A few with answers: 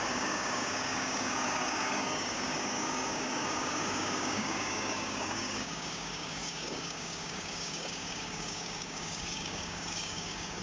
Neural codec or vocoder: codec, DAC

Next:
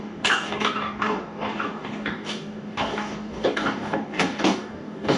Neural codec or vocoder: codec, DAC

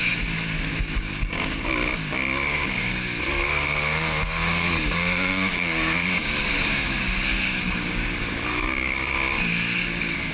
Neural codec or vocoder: codec, DAC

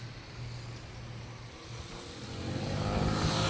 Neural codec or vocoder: none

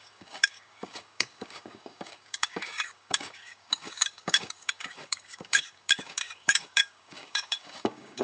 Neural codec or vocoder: codec, DAC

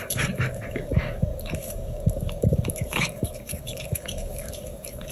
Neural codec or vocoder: codec, DAC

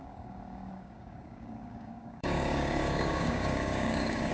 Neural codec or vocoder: codec, DAC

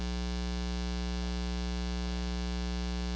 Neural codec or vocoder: none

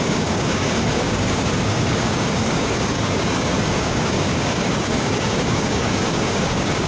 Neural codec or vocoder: codec, DAC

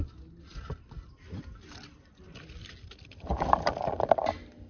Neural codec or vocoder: none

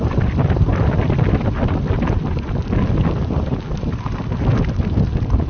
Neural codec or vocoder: none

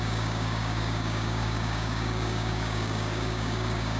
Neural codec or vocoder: codec, DAC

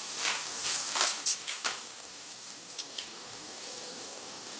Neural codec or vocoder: codec, DAC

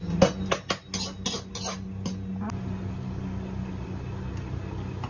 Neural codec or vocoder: none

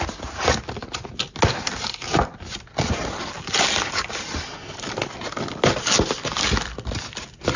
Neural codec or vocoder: none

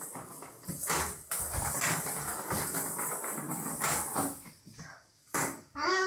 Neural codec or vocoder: codec, DAC